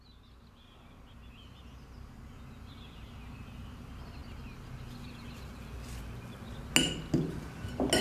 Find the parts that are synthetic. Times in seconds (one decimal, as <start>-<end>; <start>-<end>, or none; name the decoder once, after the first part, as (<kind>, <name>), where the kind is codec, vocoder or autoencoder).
none